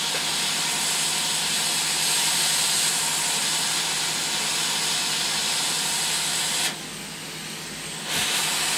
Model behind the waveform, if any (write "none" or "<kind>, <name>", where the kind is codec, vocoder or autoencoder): none